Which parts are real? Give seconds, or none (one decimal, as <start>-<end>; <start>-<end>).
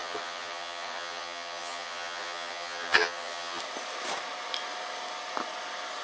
3.6-6.0